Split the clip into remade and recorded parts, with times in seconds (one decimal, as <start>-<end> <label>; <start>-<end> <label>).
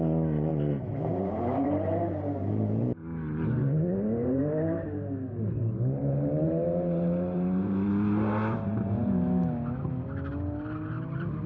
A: 0.0-0.5 recorded; 0.5-2.5 remade; 2.5-4.2 recorded; 4.2-7.9 remade; 7.9-11.5 recorded